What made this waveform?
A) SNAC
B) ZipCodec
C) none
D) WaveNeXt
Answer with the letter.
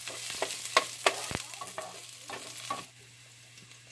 C